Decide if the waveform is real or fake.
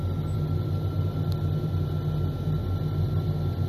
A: real